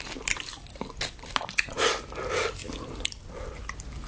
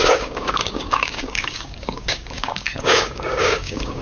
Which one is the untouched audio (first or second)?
first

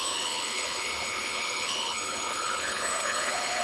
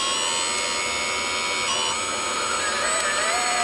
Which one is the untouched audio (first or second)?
second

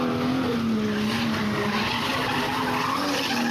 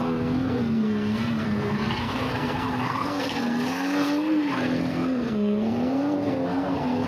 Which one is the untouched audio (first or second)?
first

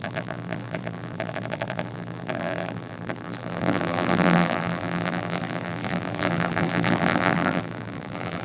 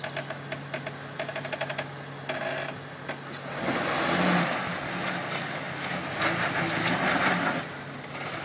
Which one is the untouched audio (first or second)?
second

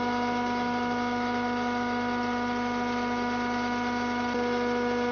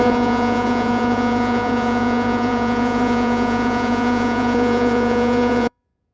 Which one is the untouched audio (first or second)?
first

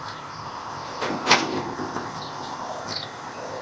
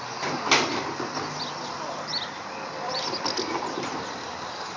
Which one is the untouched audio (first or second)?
second